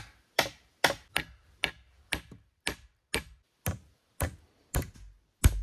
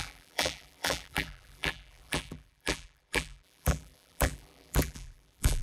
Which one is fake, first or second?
second